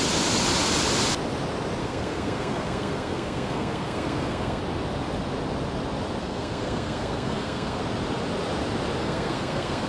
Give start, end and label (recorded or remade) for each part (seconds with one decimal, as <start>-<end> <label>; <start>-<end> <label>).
0.0-1.8 recorded; 1.8-4.6 remade; 4.6-6.2 recorded; 6.2-7.8 remade; 7.8-9.0 recorded; 9.0-9.9 remade